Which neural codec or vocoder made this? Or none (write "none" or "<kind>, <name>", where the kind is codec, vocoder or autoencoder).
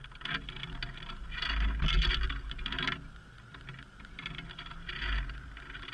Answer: none